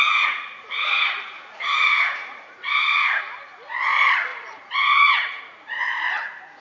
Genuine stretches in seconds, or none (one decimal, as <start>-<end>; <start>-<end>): none